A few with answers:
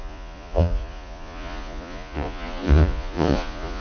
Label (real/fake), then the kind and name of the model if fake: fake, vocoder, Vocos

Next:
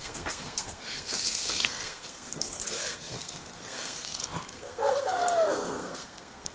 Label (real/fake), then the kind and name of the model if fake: fake, codec, SNAC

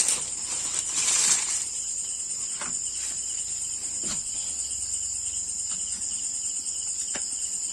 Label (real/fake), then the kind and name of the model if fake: real